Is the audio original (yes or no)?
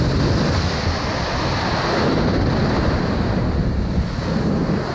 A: yes